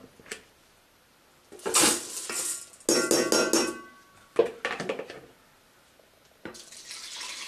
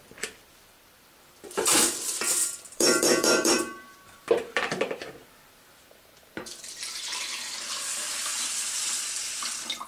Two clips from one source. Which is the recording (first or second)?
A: first